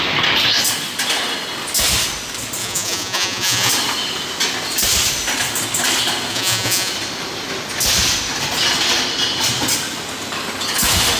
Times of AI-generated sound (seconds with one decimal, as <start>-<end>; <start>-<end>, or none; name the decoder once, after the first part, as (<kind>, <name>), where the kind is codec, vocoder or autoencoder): 2.6-3.7 (vocoder, Vocos); 6.3-6.9